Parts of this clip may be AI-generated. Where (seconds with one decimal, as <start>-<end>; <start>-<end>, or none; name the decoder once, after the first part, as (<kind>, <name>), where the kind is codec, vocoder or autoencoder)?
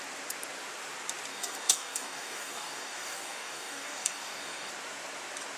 1.3-4.7 (codec, DAC)